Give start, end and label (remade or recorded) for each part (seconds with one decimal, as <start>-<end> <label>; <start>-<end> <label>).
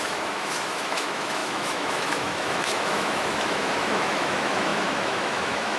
0.0-5.8 remade